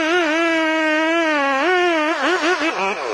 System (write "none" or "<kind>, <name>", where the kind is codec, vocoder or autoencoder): none